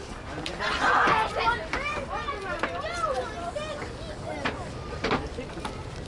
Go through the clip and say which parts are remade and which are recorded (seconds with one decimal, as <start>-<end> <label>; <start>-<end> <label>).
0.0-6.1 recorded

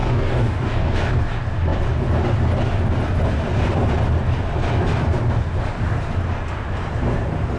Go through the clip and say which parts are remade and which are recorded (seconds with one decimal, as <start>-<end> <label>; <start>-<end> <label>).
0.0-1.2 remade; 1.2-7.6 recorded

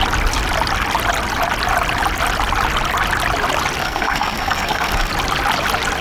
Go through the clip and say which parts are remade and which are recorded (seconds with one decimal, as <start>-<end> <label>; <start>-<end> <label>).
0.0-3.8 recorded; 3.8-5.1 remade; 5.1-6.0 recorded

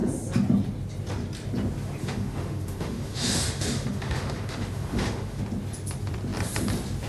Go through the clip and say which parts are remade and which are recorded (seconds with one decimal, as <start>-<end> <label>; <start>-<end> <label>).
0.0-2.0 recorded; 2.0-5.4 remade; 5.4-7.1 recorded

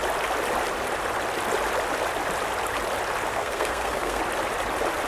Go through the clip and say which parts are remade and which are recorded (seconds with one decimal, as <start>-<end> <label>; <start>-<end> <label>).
0.0-3.3 recorded; 3.3-4.2 remade; 4.2-5.1 recorded

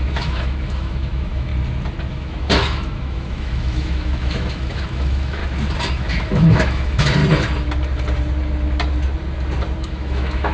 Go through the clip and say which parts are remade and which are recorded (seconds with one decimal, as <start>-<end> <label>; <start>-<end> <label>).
0.0-1.5 remade; 1.5-2.1 recorded; 2.1-5.4 remade; 5.4-5.9 recorded; 5.9-7.2 remade; 7.2-9.8 recorded; 9.8-10.5 remade

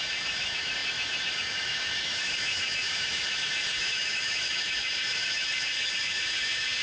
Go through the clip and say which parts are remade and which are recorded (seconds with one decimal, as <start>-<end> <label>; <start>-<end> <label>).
0.0-6.8 remade